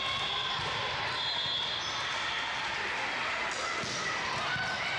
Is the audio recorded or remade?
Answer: recorded